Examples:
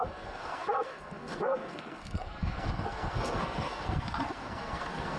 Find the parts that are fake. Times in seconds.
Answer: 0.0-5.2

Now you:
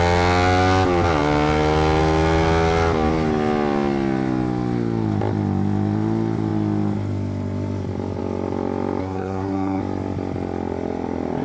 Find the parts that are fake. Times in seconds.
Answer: 9.0-9.8

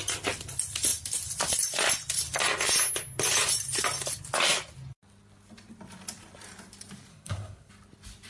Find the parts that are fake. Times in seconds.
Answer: 7.1-7.7

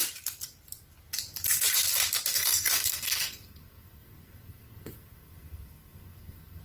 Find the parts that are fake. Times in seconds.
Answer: 2.3-6.6

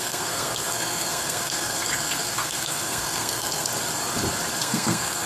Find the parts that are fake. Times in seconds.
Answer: 0.0-3.7; 4.6-5.3

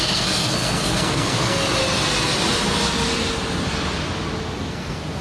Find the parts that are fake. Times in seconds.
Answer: 0.0-1.6; 4.7-5.2

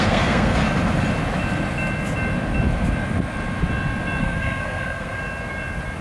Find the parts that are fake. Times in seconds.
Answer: 0.0-0.6; 4.2-5.2